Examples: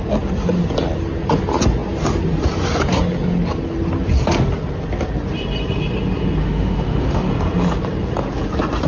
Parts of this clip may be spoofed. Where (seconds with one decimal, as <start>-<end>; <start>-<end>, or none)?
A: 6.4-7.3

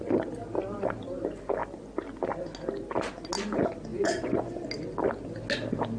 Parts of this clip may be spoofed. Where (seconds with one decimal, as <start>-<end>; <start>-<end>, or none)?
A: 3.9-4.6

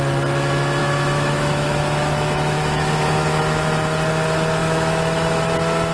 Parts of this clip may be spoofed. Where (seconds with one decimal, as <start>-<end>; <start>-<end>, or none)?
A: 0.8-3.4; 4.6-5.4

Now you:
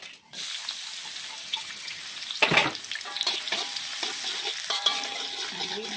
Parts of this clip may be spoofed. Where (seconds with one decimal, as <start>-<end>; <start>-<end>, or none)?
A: 1.4-2.0

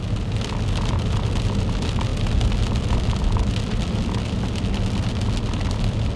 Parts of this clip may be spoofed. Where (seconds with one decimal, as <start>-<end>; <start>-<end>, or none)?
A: none

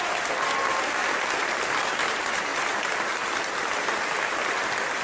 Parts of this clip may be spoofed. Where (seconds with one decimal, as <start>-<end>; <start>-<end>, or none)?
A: none